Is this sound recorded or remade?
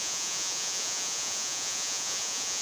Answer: remade